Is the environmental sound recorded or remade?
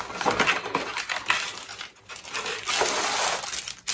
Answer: recorded